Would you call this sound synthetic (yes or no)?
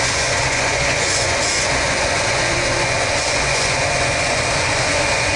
yes